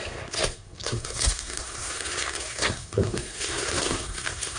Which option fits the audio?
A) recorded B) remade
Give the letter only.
B